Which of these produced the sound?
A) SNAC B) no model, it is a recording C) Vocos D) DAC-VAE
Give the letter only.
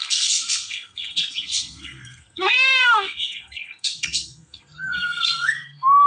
A